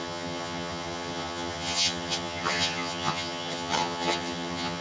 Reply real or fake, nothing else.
fake